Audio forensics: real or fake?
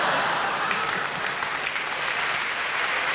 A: real